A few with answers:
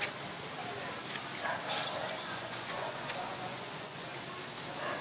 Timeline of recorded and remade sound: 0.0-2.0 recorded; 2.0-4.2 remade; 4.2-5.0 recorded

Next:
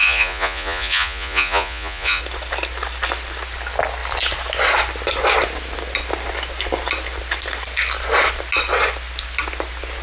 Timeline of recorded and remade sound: 0.0-2.2 remade; 2.2-10.0 recorded

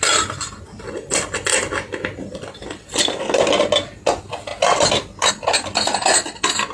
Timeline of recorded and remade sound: 0.0-6.7 recorded

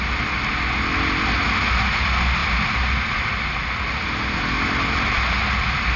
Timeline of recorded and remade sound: 0.0-6.0 recorded

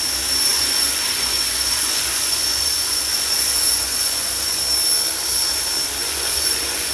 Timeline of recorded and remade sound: 0.0-0.5 recorded; 0.5-4.6 remade; 4.6-6.0 recorded; 6.0-6.9 remade

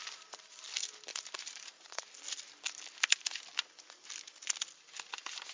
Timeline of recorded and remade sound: 0.0-0.6 remade; 0.6-1.1 recorded; 1.1-2.2 remade; 2.2-5.5 recorded